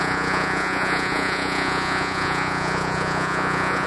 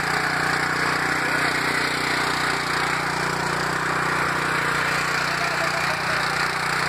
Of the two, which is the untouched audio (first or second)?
second